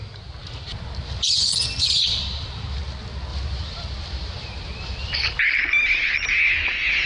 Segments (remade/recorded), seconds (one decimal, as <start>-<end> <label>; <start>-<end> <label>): 0.0-1.0 recorded; 1.0-2.8 remade; 2.8-3.3 recorded; 3.3-6.4 remade; 6.4-7.1 recorded